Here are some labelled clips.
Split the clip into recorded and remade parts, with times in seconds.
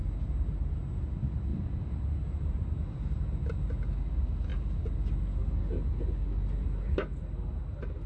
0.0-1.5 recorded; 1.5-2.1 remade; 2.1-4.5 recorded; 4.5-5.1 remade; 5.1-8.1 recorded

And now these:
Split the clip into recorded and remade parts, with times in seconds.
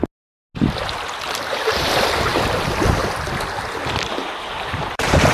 0.0-1.5 recorded; 1.5-2.3 remade; 2.3-4.1 recorded; 4.1-5.3 remade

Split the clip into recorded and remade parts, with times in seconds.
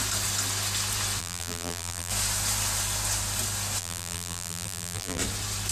0.0-1.2 recorded; 1.2-2.1 remade; 2.1-3.8 recorded; 3.8-5.2 remade; 5.2-5.7 recorded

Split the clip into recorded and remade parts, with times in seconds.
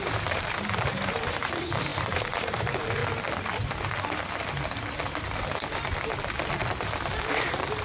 0.0-3.0 remade; 3.0-7.2 recorded; 7.2-7.8 remade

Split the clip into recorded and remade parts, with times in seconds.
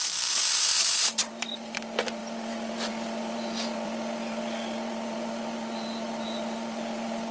0.0-7.3 remade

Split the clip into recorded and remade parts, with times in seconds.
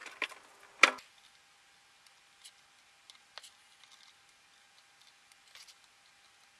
0.0-6.6 recorded